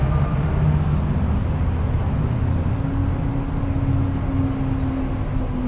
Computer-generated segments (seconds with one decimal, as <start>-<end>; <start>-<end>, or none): none